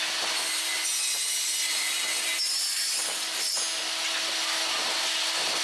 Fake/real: real